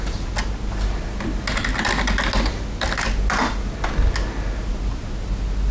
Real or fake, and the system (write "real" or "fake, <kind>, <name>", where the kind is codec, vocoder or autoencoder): real